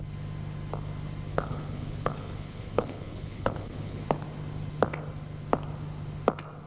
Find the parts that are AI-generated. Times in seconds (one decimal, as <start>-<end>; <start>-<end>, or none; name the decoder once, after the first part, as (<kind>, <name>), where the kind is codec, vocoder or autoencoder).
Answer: 1.3-4.0 (codec, HILCodec)

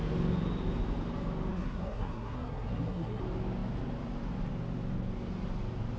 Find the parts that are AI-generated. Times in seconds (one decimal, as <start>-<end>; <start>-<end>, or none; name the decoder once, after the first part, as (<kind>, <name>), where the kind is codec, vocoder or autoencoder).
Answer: 1.5-3.2 (codec, SNAC)

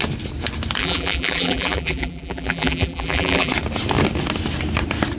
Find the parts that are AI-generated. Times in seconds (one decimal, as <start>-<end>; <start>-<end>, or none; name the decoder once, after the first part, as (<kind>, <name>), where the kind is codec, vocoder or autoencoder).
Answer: 0.8-3.5 (vocoder, BigVGAN v2)

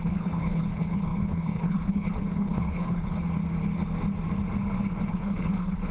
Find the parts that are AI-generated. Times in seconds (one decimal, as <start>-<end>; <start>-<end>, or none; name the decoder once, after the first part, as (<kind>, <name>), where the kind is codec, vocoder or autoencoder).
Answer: 0.0-3.2 (codec, HILCodec); 5.1-5.9

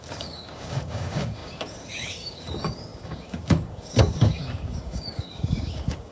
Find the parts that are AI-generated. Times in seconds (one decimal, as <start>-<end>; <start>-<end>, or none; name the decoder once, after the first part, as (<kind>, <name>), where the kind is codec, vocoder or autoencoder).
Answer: 0.0-6.1 (codec, DAC)